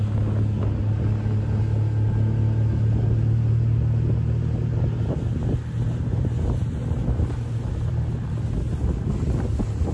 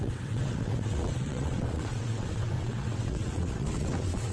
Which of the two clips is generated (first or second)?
second